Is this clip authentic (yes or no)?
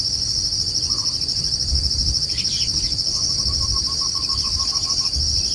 yes